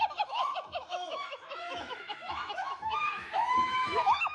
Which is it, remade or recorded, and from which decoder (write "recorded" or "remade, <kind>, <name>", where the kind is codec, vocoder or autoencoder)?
remade, autoencoder, DAC-VAE